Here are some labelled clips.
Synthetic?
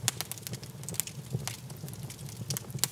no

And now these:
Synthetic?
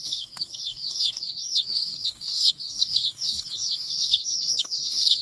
yes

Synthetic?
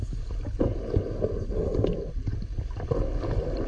no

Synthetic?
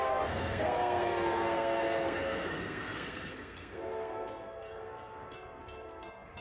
yes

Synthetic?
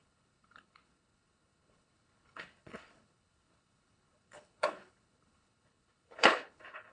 yes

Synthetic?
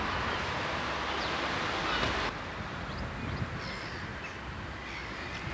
no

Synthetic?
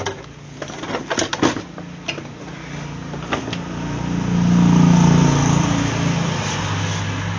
no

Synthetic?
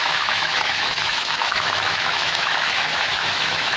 yes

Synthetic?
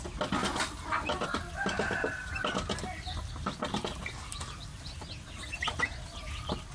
no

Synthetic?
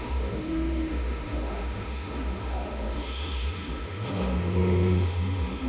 yes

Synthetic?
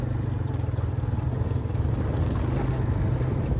no